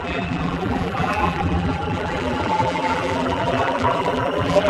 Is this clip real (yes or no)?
no